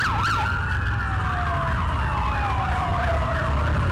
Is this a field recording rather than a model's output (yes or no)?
yes